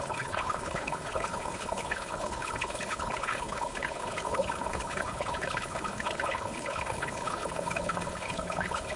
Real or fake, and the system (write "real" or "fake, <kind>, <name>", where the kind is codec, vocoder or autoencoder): fake, codec, HILCodec